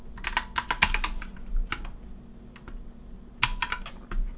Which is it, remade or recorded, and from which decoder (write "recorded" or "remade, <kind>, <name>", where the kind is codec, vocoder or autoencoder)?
recorded